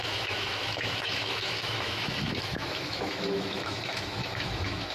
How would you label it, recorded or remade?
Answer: remade